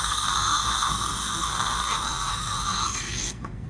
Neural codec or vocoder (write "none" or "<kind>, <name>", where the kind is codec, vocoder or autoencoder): codec, SNAC